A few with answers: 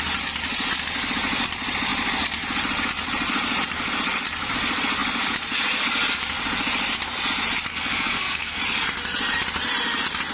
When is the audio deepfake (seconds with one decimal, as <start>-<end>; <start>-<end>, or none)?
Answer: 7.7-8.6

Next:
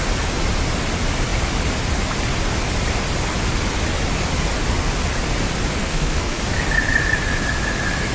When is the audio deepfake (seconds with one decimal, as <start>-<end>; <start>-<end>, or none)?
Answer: 5.8-6.4

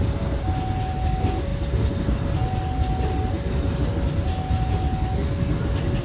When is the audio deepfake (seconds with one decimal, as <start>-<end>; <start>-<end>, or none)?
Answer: none

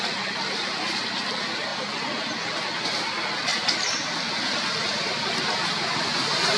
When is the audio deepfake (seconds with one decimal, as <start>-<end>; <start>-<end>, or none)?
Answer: none

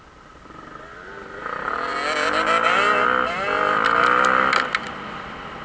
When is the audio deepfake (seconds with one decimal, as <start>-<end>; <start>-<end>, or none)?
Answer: none